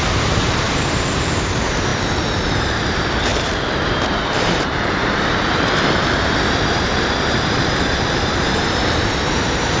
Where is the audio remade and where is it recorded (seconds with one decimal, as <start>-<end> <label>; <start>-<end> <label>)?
0.0-1.9 remade; 1.9-2.5 recorded; 2.5-9.8 remade